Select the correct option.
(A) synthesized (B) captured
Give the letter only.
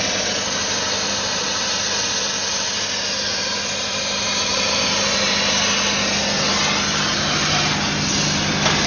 B